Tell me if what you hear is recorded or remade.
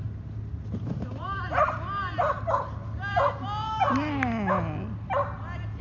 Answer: recorded